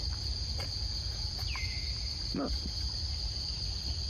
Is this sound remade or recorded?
recorded